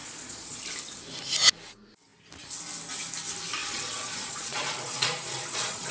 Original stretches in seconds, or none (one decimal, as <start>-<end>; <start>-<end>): 0.6-3.6